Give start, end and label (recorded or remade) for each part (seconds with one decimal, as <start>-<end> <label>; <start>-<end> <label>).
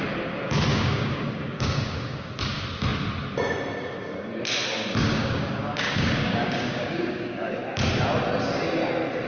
0.0-0.7 recorded; 0.7-2.3 remade; 2.3-5.0 recorded; 5.0-7.5 remade; 7.5-9.3 recorded